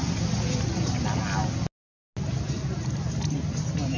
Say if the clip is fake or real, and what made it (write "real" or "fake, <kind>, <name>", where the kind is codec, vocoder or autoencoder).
real